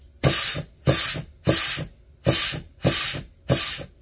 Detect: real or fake real